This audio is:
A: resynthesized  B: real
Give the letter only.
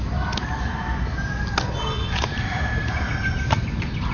B